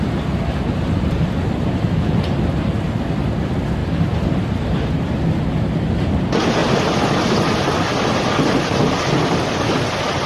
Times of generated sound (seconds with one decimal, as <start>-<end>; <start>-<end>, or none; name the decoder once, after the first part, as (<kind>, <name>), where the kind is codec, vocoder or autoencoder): 3.8-5.3 (vocoder, BigVGAN v2)